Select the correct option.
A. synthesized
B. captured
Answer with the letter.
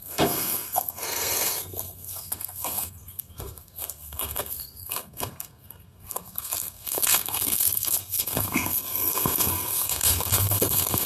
A